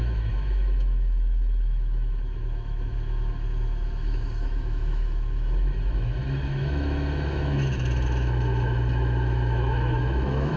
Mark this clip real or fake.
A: fake